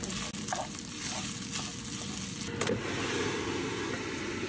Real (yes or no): yes